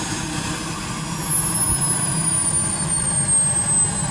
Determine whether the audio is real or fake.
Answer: real